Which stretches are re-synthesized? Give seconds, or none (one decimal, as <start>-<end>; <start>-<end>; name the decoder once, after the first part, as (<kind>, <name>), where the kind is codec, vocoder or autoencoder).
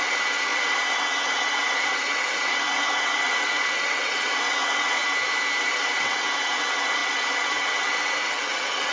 0.0-5.0 (vocoder, WaveNeXt); 5.6-8.9